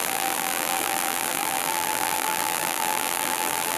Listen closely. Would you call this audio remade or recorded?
remade